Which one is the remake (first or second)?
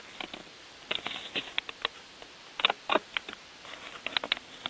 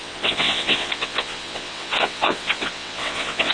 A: second